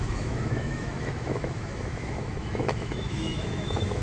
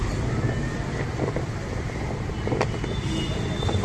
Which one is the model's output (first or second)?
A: first